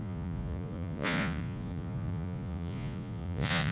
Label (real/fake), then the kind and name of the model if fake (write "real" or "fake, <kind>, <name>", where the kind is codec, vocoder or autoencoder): fake, vocoder, Vocos